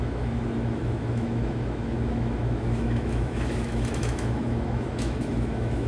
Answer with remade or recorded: remade